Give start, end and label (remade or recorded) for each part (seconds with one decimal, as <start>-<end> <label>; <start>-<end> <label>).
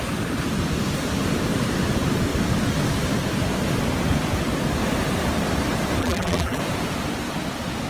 0.0-6.0 recorded; 6.0-6.6 remade; 6.6-7.9 recorded